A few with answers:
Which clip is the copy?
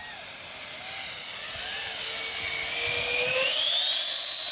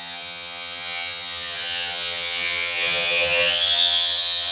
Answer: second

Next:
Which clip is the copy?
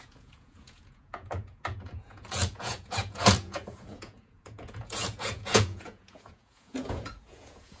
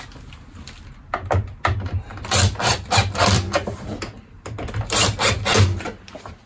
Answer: first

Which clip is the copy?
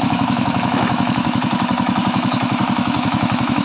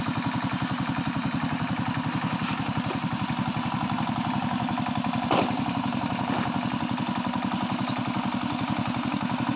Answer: first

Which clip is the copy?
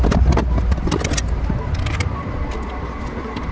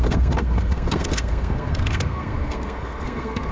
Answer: second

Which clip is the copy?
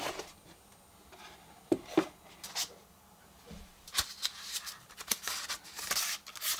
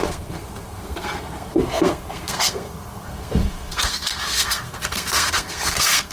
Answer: second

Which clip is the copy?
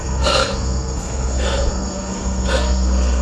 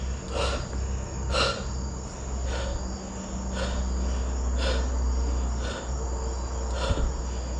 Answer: first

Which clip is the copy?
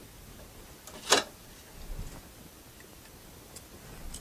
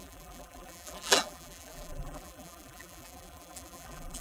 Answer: second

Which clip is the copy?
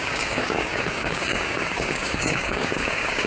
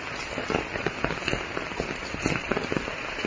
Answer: first